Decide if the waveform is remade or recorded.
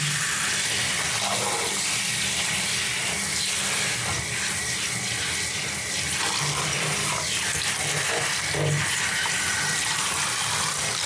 recorded